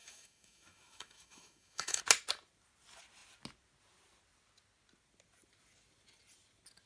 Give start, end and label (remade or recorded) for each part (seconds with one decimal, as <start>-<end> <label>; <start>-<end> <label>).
0.0-2.0 remade; 2.0-6.9 recorded